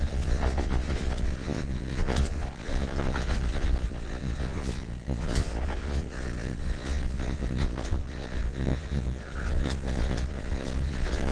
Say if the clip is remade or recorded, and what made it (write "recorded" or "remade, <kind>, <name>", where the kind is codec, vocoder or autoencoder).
remade, vocoder, Vocos